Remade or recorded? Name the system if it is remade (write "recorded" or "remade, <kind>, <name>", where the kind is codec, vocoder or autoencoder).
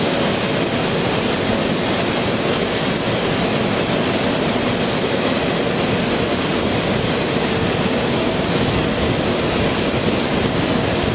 recorded